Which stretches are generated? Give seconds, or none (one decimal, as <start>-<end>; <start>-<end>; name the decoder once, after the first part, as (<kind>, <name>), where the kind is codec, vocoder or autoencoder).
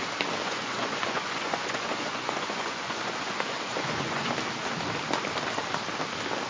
0.4-4.3 (vocoder, Vocos)